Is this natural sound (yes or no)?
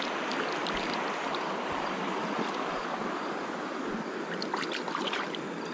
yes